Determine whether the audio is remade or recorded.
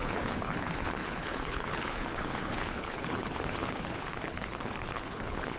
remade